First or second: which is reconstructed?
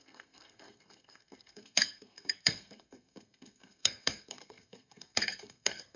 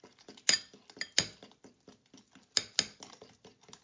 first